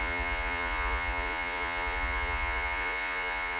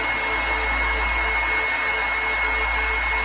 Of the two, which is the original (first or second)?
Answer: second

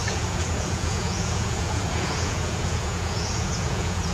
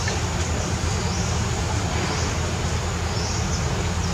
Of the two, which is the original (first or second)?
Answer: second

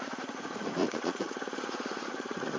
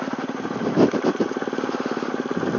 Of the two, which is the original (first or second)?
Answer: second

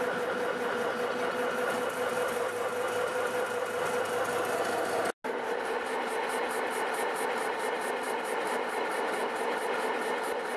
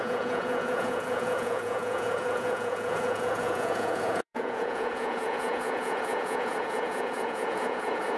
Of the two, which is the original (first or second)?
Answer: first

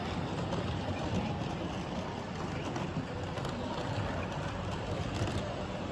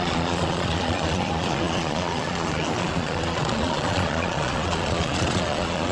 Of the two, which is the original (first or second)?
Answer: first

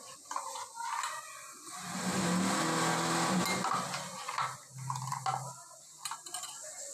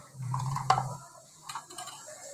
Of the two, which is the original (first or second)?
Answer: first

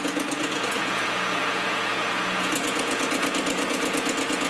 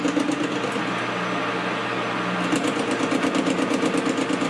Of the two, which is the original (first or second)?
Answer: second